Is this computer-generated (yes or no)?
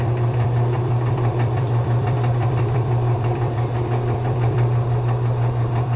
yes